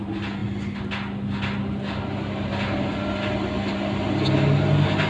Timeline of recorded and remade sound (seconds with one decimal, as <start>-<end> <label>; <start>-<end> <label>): 0.0-5.1 recorded